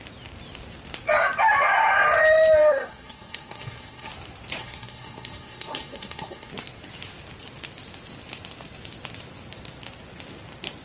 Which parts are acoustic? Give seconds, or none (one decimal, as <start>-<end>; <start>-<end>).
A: 0.0-2.6; 4.1-4.6; 6.5-10.8

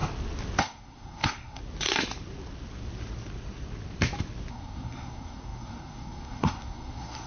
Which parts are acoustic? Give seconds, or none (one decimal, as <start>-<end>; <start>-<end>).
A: 0.0-0.6; 1.6-4.5

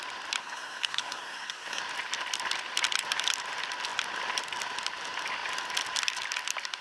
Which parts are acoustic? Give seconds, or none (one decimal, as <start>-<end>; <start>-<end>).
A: 0.0-0.4; 1.8-6.8

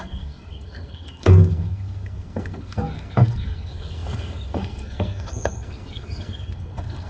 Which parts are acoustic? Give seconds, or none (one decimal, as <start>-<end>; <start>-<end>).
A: none

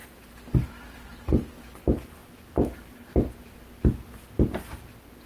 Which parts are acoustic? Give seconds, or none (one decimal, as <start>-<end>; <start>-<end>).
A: 0.0-5.3

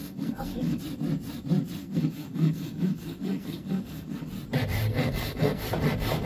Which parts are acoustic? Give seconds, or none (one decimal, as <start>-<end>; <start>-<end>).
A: 0.8-1.8; 4.3-4.9; 5.6-6.3

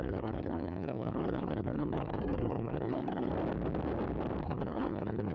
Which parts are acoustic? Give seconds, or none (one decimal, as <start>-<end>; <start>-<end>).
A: 3.3-4.4